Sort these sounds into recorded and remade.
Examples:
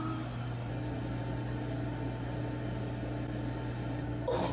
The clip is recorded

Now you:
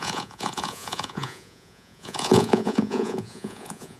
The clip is remade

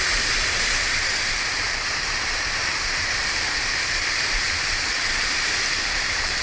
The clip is remade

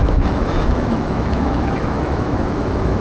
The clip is remade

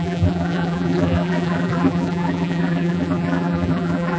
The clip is remade